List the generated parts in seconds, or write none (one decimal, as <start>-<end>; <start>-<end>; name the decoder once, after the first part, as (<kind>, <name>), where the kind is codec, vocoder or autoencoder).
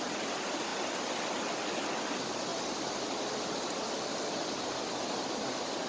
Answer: none